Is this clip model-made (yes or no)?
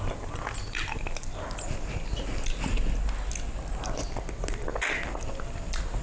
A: no